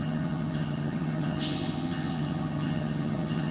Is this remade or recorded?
remade